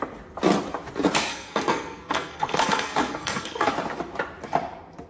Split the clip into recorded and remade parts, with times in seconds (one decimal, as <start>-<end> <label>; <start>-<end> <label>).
0.0-1.3 recorded; 1.3-3.7 remade; 3.7-5.1 recorded